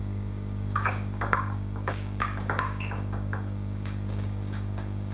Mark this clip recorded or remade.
remade